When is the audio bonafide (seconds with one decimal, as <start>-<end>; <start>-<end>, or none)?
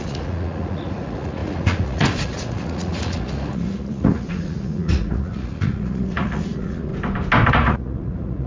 6.9-7.5